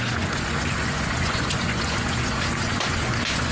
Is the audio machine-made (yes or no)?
yes